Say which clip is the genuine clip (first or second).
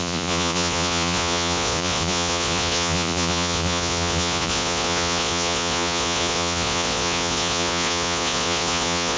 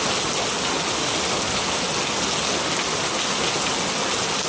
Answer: second